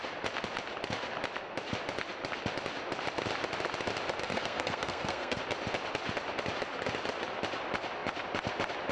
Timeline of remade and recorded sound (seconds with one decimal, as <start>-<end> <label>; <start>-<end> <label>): 0.0-4.2 recorded; 4.2-5.4 remade; 5.4-8.9 recorded